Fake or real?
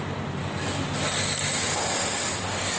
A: real